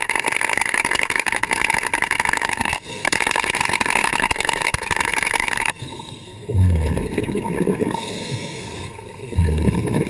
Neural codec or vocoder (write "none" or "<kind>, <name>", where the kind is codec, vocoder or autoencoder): codec, SNAC